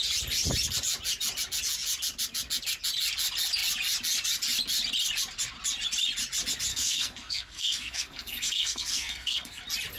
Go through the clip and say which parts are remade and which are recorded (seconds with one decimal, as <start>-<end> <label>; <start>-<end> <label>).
0.0-6.7 recorded; 6.7-9.6 remade; 9.6-10.0 recorded